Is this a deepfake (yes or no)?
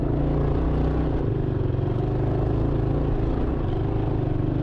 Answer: no